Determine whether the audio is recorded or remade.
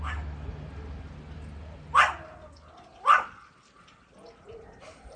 recorded